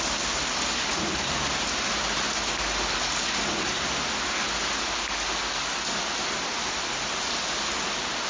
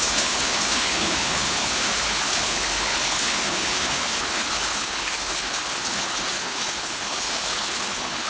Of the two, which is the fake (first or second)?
second